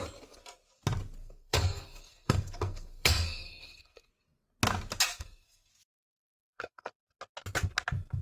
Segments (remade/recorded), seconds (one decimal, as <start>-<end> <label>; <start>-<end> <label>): 0.0-1.2 recorded; 1.2-4.1 remade; 4.1-5.1 recorded; 5.1-5.7 remade; 5.7-6.2 recorded; 6.2-6.9 remade; 6.9-8.2 recorded